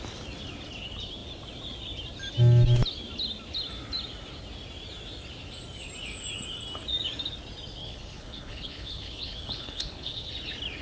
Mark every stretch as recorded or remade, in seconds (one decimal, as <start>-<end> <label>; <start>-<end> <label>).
0.0-7.8 recorded; 7.8-10.3 remade; 10.3-10.8 recorded